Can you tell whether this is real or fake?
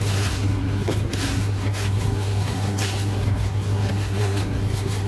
fake